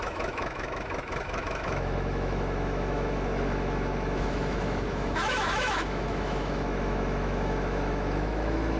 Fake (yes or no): yes